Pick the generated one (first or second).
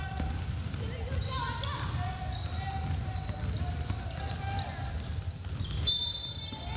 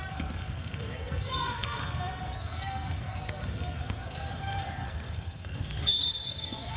second